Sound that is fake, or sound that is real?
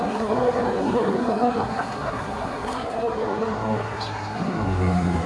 fake